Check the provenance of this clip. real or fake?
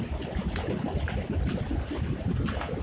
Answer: real